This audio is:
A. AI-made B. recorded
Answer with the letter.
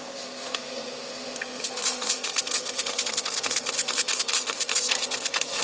A